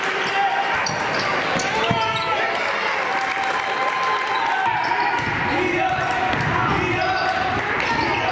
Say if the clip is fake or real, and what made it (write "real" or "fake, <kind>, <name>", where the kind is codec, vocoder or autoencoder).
real